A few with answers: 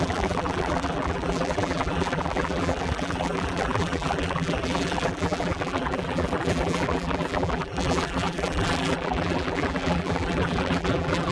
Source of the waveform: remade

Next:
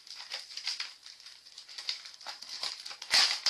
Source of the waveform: remade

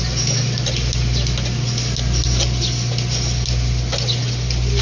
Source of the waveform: recorded